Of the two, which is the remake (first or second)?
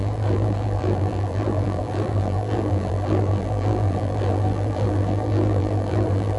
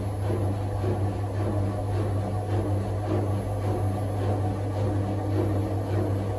first